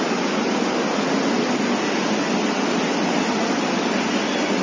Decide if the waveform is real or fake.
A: real